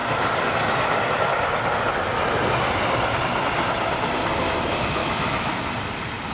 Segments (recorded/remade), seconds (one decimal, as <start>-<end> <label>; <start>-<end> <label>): 0.0-5.0 recorded; 5.0-5.6 remade; 5.6-6.3 recorded